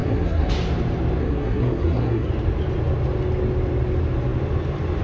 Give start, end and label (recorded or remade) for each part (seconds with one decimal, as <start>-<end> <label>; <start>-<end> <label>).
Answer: 0.0-0.5 remade; 0.5-1.2 recorded; 1.2-2.3 remade; 2.3-5.0 recorded